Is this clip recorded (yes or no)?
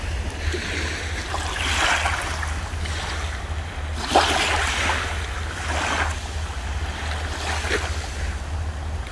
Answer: yes